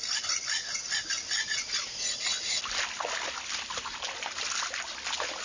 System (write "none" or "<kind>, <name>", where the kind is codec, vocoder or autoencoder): none